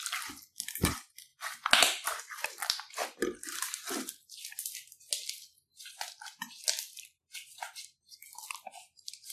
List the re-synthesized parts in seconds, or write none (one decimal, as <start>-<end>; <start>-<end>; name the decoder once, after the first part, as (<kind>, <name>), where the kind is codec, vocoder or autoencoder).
none